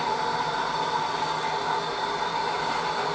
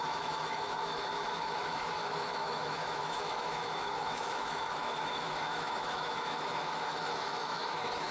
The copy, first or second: second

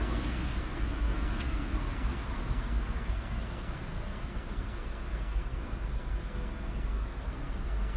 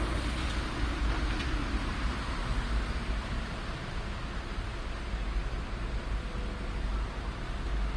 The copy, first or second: first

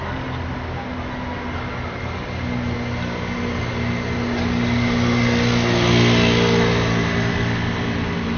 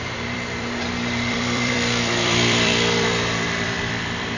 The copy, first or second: second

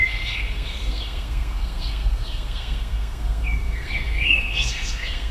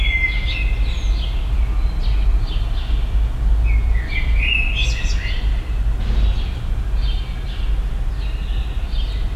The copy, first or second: first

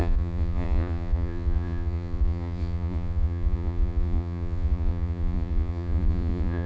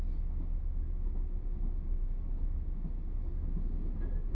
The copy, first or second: first